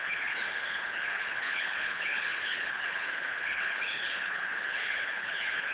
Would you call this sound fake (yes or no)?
yes